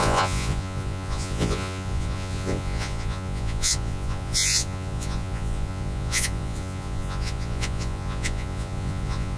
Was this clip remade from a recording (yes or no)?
yes